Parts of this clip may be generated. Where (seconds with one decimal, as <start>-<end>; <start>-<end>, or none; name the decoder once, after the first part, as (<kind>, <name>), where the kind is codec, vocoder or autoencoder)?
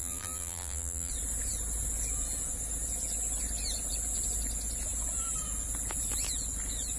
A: 0.0-1.1 (vocoder, BigVGAN v2)